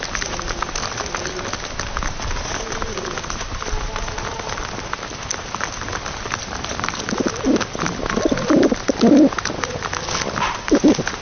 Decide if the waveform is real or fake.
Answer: real